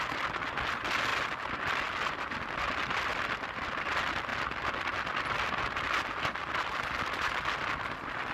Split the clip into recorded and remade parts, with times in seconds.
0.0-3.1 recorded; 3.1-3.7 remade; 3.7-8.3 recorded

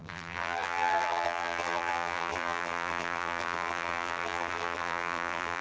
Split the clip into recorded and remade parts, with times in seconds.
0.0-5.6 remade

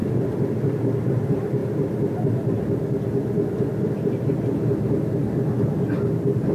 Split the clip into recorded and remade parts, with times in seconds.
0.0-0.8 recorded; 0.8-1.6 remade; 1.6-4.4 recorded; 4.4-6.5 remade

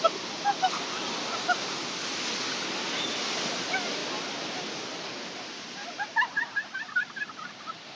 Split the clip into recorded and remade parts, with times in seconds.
0.0-4.0 recorded; 4.0-8.0 remade

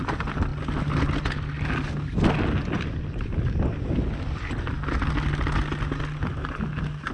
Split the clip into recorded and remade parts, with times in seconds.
0.0-7.1 recorded

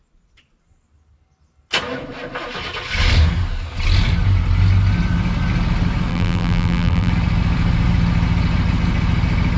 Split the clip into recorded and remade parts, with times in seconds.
0.0-6.1 recorded; 6.1-7.1 remade; 7.1-9.6 recorded